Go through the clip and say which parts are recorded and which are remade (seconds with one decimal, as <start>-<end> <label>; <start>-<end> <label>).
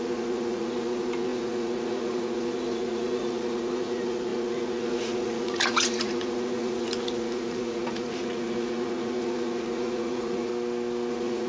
0.0-10.5 remade; 10.5-11.1 recorded; 11.1-11.5 remade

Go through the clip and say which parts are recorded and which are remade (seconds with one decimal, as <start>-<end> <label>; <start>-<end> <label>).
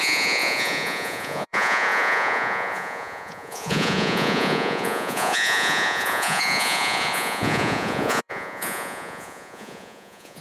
0.0-10.4 remade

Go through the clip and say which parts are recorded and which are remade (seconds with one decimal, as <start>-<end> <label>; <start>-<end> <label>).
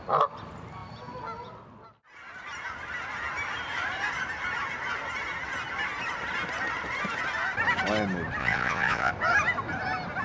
0.0-8.4 recorded; 8.4-9.1 remade; 9.1-10.2 recorded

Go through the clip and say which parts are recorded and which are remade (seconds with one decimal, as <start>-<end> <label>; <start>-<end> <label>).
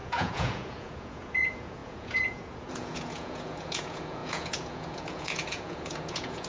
0.0-6.5 remade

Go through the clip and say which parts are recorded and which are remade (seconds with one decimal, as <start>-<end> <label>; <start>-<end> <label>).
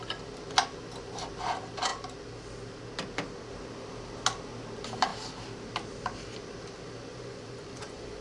0.0-7.1 recorded; 7.1-8.2 remade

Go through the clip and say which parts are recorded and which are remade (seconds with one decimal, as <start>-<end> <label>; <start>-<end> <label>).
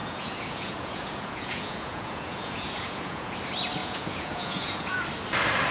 0.0-3.4 remade; 3.4-3.8 recorded; 3.8-5.0 remade; 5.0-5.7 recorded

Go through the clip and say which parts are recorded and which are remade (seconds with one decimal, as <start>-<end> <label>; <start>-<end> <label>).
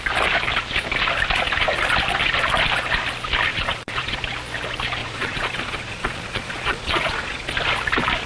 0.0-3.5 recorded; 3.5-4.2 remade; 4.2-5.0 recorded; 5.0-7.5 remade; 7.5-8.3 recorded